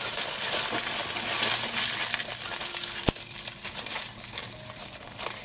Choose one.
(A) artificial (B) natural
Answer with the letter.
B